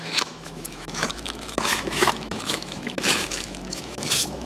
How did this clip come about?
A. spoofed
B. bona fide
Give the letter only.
A